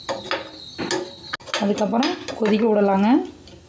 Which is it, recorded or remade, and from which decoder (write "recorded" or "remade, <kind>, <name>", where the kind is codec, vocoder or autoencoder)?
recorded